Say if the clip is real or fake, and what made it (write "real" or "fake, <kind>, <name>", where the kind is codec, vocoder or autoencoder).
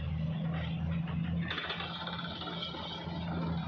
real